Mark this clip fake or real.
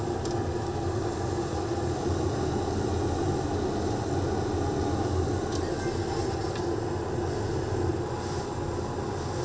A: real